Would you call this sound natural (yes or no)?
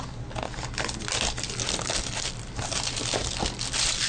yes